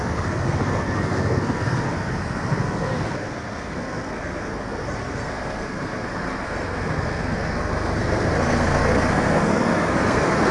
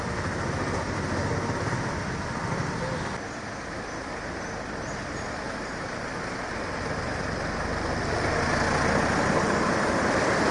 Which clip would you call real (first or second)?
second